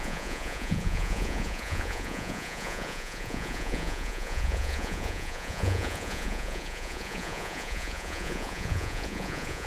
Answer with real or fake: fake